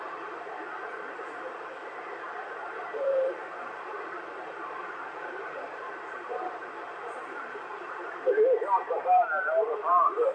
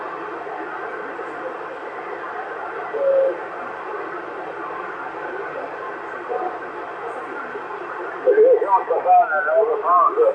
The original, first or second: second